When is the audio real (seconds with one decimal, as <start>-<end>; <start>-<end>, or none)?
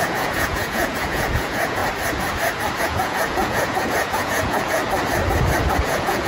1.8-2.8; 4.8-5.8